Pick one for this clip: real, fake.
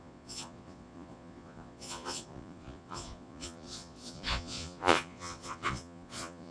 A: fake